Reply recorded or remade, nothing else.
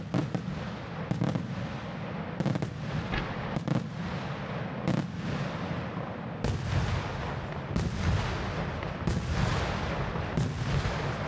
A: recorded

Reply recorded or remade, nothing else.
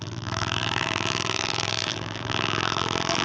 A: remade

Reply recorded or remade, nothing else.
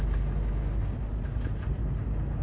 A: recorded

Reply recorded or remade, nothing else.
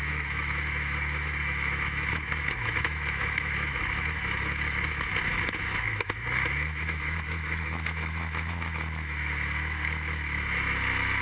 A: remade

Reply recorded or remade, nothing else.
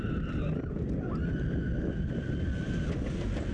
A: recorded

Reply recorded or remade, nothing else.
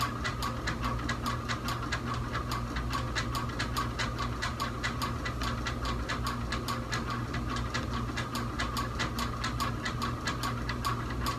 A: recorded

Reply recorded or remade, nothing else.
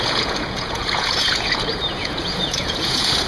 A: remade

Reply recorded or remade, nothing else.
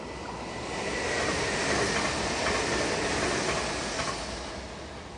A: recorded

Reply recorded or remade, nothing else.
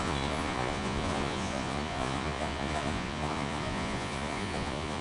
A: remade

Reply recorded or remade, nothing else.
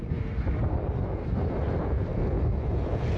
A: remade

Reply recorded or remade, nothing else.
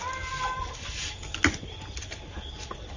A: recorded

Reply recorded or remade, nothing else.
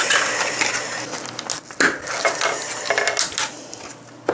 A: recorded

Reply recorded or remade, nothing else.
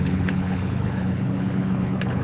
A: remade